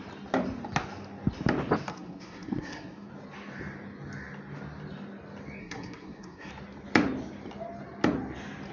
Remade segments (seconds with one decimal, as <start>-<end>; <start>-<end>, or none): 1.9-3.1; 5.6-6.5